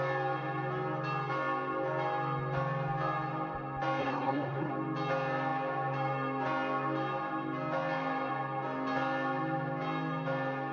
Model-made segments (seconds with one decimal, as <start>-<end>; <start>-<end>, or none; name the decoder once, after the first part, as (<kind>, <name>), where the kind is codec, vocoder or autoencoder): 4.0-4.7 (codec, SNAC)